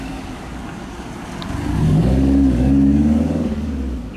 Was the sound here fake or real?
fake